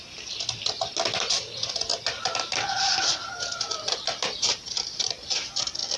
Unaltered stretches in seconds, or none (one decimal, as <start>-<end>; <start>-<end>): 0.0-1.9; 5.5-6.0